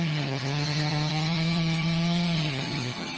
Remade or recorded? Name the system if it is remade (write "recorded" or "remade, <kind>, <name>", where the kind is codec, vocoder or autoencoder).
remade, vocoder, HiFi-GAN